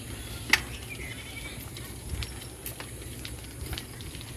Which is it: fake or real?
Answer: real